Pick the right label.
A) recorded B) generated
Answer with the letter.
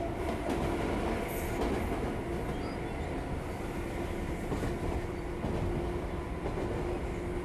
A